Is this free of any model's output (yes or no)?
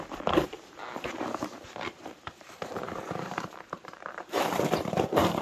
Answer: no